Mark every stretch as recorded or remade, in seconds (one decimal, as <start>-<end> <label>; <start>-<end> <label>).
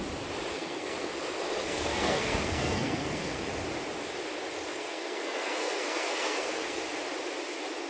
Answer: 0.0-0.5 recorded; 0.5-1.1 remade; 1.1-1.6 recorded; 1.6-3.5 remade; 3.5-4.7 recorded; 4.7-6.8 remade; 6.8-7.9 recorded